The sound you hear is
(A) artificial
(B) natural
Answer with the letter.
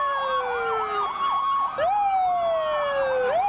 B